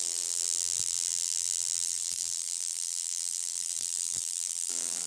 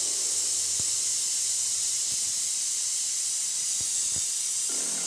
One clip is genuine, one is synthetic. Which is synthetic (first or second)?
first